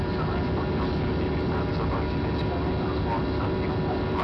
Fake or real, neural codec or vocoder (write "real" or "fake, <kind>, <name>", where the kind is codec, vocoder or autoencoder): real